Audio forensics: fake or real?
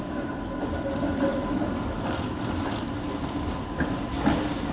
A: real